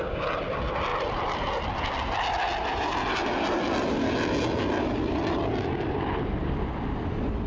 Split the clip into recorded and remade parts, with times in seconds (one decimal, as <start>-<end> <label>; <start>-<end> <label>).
0.0-7.5 recorded